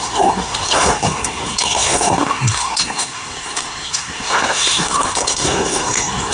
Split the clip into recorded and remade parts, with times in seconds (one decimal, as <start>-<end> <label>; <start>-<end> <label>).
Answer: 0.0-6.3 remade